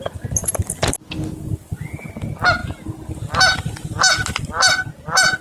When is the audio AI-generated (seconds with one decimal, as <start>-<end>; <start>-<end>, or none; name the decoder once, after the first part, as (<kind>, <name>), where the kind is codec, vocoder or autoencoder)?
none